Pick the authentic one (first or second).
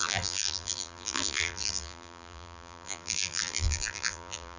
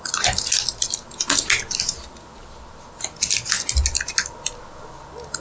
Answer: second